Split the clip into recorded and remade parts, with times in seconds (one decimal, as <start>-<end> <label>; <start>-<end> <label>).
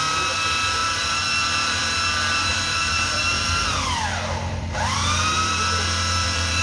0.0-0.8 recorded; 0.8-1.8 remade; 1.8-2.5 recorded; 2.5-6.6 remade